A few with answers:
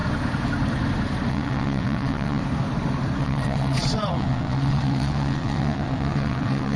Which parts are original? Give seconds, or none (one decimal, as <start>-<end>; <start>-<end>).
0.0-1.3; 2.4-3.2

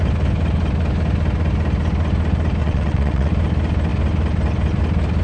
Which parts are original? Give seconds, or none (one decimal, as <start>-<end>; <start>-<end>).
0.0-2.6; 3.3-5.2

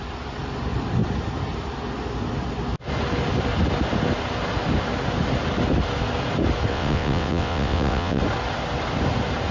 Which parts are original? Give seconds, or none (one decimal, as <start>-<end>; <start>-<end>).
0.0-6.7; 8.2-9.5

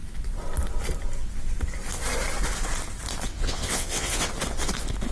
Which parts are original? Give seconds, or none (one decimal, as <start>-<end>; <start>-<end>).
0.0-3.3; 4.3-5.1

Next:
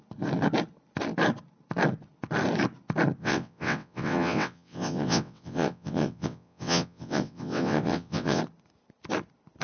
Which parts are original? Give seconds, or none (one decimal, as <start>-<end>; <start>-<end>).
0.0-3.2; 8.4-9.6